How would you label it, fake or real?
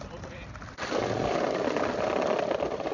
real